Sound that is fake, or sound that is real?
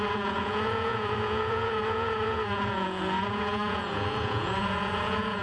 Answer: fake